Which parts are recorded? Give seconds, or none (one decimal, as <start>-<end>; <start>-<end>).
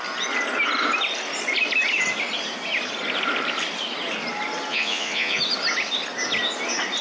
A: 0.0-4.7; 5.4-7.0